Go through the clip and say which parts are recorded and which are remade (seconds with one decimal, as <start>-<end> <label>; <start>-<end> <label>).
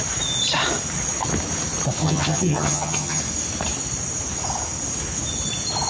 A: 0.0-2.0 recorded; 2.0-3.2 remade; 3.2-5.9 recorded